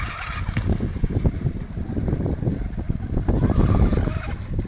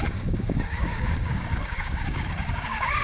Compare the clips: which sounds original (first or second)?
first